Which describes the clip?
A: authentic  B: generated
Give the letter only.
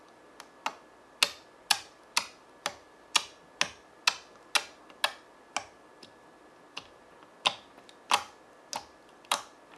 A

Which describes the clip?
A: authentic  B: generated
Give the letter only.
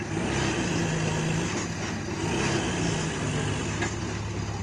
A